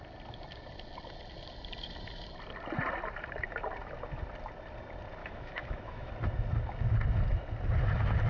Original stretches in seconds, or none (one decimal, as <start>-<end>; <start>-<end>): 0.0-5.2; 6.1-8.3